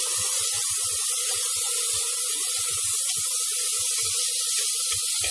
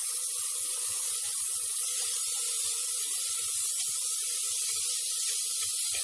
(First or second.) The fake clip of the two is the second